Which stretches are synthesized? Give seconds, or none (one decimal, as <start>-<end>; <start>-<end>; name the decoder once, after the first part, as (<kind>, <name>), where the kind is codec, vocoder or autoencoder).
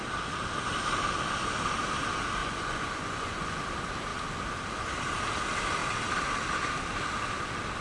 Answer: 2.4-3.6 (vocoder, Vocos)